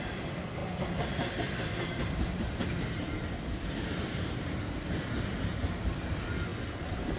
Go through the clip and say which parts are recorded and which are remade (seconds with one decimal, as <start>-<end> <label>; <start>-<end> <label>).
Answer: 0.0-7.2 remade